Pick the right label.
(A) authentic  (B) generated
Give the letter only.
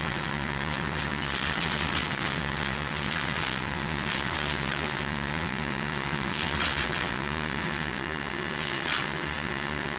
B